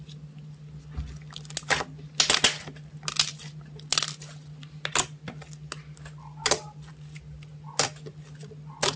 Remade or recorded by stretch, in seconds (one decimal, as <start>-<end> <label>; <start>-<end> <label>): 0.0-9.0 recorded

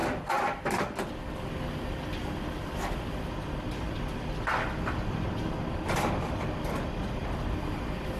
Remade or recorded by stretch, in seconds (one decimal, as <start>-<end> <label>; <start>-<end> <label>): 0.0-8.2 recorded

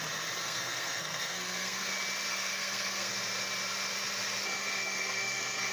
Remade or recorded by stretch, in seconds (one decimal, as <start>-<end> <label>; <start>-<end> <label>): 0.0-0.4 recorded; 0.4-1.9 remade; 1.9-2.3 recorded; 2.3-3.1 remade; 3.1-4.6 recorded; 4.6-5.7 remade